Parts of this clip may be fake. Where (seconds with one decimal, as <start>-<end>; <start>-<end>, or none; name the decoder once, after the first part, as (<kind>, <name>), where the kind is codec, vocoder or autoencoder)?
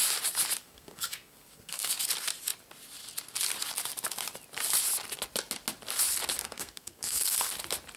0.6-1.9 (codec, SNAC); 6.4-7.5